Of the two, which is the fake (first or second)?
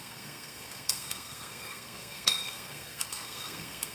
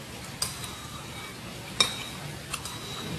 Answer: first